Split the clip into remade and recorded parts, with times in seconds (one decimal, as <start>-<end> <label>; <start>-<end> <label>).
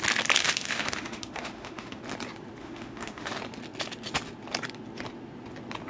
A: 0.0-0.4 recorded; 0.4-2.0 remade; 2.0-2.6 recorded; 2.6-3.3 remade; 3.3-5.9 recorded